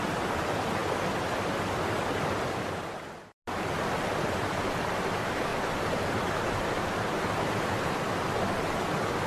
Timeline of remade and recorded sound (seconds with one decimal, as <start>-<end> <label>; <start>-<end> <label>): 0.0-5.5 recorded; 5.5-8.0 remade; 8.0-9.3 recorded